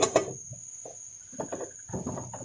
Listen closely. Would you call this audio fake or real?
real